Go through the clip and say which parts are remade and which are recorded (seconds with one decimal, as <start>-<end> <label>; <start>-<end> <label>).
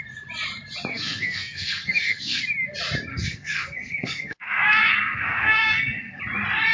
0.0-0.9 recorded; 0.9-2.4 remade; 2.4-3.1 recorded; 3.1-6.2 remade; 6.2-6.7 recorded